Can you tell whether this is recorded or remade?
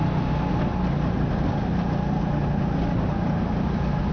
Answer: recorded